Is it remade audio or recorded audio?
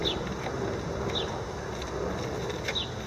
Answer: recorded